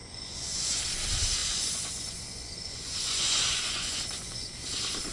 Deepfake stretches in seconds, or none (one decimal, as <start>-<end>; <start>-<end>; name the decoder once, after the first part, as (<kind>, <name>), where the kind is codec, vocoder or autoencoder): 0.0-0.8 (vocoder, Vocos); 1.4-4.5